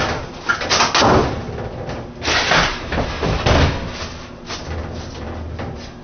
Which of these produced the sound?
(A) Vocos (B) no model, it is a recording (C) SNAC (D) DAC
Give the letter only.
B